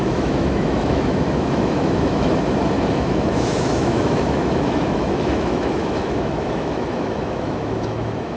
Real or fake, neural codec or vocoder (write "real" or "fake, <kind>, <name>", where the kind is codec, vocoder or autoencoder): fake, autoencoder, DAC-VAE